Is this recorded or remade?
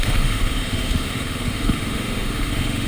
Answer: remade